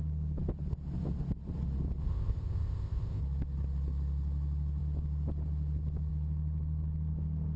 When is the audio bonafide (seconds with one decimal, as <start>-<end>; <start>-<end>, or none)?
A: 0.0-2.0; 3.2-7.6